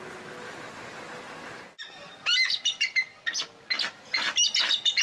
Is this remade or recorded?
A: recorded